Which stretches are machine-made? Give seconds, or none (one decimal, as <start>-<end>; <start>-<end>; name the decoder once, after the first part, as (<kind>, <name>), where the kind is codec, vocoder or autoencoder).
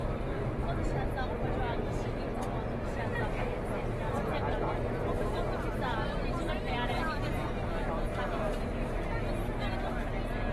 none